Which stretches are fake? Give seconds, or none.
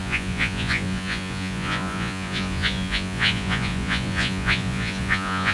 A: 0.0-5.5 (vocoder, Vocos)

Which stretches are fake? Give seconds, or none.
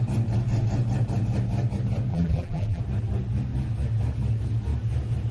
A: 2.1-2.8 (vocoder, BigVGAN v2)